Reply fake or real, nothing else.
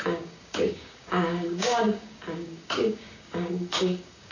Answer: fake